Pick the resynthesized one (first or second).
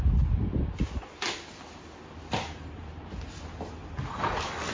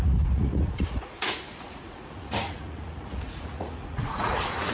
second